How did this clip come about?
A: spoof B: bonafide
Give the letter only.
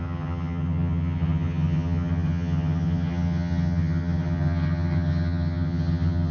A